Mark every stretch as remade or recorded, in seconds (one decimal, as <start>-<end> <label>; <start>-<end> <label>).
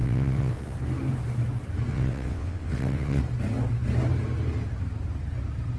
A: 0.0-0.8 remade; 0.8-1.9 recorded; 1.9-3.2 remade; 3.2-5.8 recorded